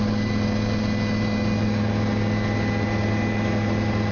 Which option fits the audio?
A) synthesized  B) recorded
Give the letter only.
B